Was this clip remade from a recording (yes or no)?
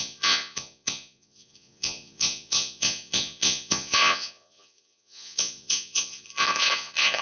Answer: yes